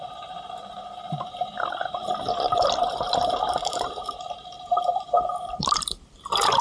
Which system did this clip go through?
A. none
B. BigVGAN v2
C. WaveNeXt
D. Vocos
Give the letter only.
B